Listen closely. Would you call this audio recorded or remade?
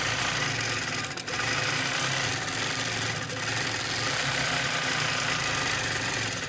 recorded